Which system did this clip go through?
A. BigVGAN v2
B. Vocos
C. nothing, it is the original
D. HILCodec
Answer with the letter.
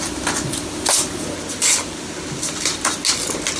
C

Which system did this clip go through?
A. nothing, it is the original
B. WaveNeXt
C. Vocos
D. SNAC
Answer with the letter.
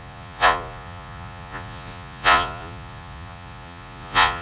C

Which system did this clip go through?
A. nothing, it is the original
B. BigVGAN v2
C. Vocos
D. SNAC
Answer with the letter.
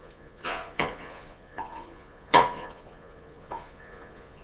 C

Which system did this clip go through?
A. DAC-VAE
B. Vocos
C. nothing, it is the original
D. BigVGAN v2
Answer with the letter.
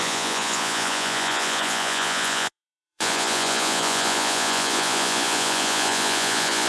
B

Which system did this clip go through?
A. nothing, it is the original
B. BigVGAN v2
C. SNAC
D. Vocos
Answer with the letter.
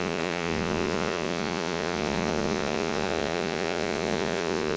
D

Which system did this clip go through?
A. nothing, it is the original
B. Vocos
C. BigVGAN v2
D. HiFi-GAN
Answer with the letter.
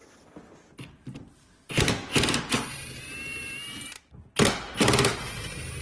A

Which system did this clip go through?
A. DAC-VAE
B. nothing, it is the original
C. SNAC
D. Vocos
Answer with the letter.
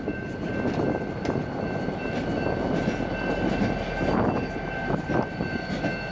B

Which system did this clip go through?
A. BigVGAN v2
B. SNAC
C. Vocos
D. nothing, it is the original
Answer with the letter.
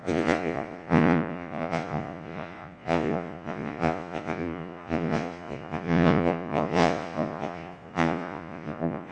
C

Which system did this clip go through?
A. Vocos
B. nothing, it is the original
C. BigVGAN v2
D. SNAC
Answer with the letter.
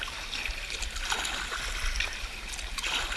B